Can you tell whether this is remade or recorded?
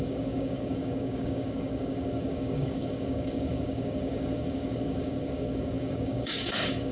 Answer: remade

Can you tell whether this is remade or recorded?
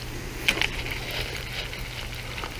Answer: recorded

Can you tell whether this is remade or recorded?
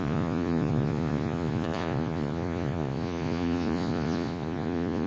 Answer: remade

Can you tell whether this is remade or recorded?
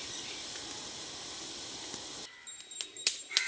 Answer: recorded